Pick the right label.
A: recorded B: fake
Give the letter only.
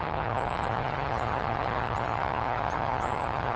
B